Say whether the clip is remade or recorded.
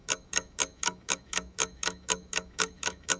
remade